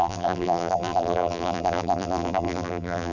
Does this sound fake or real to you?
fake